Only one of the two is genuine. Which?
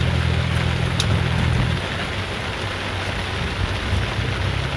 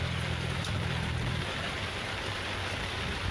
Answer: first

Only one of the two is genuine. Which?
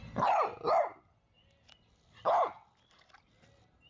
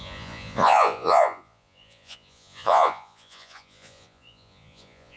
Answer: first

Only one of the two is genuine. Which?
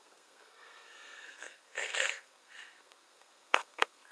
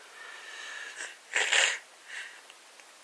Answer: second